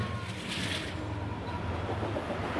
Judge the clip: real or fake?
real